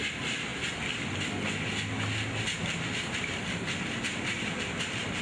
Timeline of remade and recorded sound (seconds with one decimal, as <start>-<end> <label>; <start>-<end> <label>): 0.0-4.1 recorded; 4.1-5.2 remade